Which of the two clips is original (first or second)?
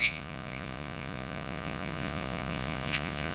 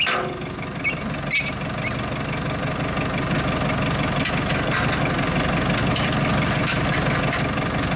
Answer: second